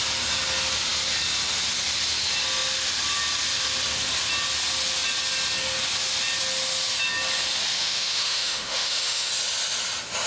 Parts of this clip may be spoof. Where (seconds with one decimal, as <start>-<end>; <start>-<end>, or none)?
7.7-9.3

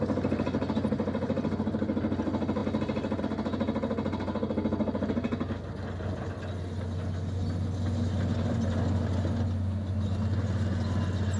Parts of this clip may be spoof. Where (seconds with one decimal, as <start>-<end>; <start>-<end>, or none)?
none

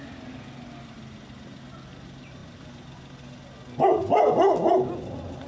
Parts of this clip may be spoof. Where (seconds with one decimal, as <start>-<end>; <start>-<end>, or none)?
none

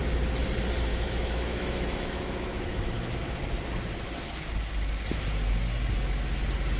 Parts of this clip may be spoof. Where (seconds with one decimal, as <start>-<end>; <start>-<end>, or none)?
0.9-3.2

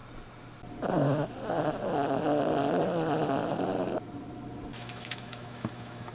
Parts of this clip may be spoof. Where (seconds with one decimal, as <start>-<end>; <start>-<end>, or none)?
4.7-6.1

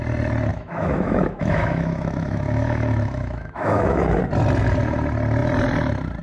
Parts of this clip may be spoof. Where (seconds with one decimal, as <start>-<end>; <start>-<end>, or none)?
0.5-4.2

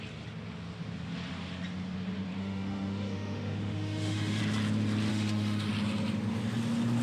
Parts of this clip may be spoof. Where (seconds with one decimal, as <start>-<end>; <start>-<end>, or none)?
2.4-4.4; 5.1-5.7